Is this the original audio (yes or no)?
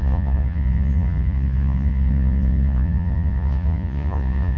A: no